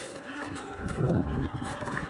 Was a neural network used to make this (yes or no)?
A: yes